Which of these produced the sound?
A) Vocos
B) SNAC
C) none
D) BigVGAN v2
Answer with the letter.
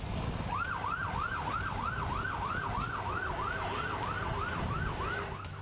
C